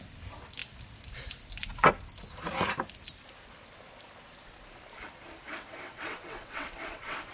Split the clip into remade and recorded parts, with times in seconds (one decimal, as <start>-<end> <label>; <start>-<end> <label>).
0.0-5.7 recorded; 5.7-7.3 remade